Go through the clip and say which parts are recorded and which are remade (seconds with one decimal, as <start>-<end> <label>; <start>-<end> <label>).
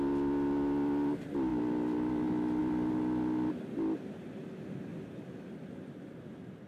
0.0-2.6 recorded; 2.6-4.4 remade; 4.4-4.9 recorded; 4.9-5.5 remade; 5.5-6.7 recorded